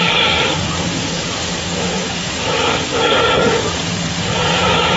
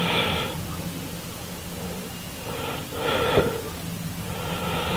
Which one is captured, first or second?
second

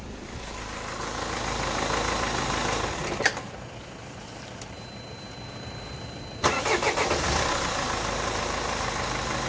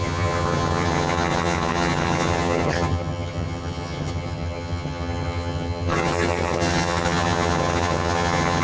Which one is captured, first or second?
first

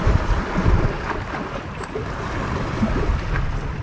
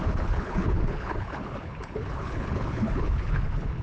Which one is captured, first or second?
first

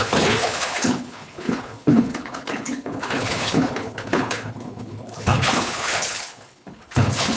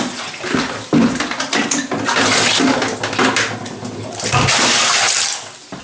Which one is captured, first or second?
second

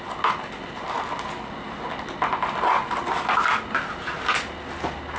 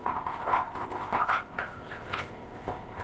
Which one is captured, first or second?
first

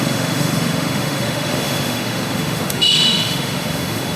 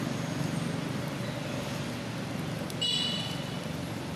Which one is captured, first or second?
second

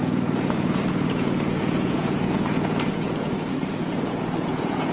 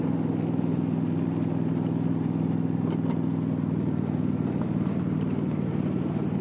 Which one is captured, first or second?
second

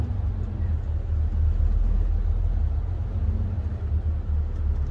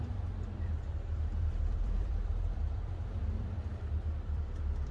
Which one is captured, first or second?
first